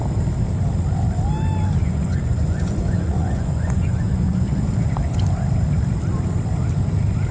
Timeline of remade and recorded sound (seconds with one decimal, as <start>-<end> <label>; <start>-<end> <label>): 0.0-1.8 recorded; 1.8-4.7 remade; 4.7-7.3 recorded